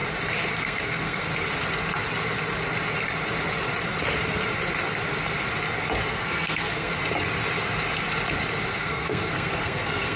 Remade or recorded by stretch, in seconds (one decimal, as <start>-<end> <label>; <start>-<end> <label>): 0.0-0.6 recorded; 0.6-1.3 remade; 1.3-6.1 recorded; 6.1-6.9 remade; 6.9-8.7 recorded; 8.7-10.2 remade